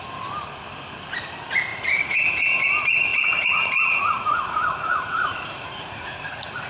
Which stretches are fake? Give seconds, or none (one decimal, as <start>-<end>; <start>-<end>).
1.7-2.6; 3.1-6.7